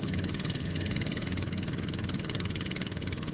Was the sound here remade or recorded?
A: remade